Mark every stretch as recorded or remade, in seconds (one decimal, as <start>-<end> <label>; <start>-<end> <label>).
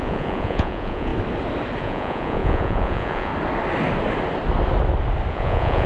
0.0-1.1 remade; 1.1-1.8 recorded; 1.8-3.3 remade; 3.3-5.3 recorded; 5.3-5.9 remade